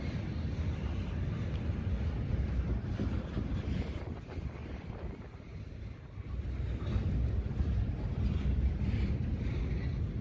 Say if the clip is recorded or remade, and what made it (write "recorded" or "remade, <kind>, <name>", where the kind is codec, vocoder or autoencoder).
recorded